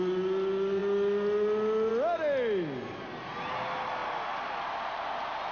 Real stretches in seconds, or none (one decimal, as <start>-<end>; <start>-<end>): 0.0-5.5